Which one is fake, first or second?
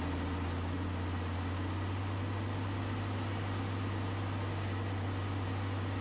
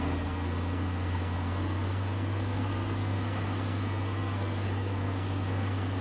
second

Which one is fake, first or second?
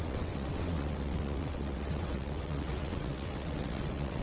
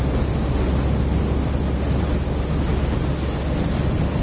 first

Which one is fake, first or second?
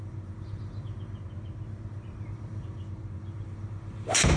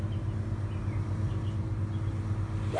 first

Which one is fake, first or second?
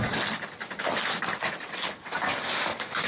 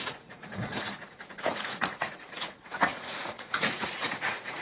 second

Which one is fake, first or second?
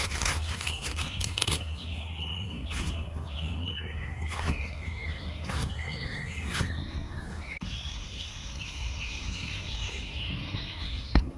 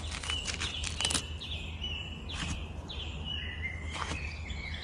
first